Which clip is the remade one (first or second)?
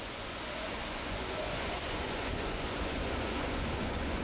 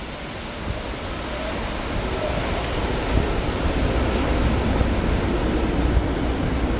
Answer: first